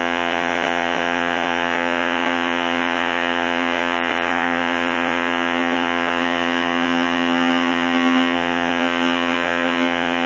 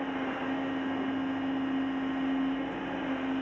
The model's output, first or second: first